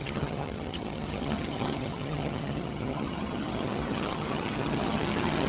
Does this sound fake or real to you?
fake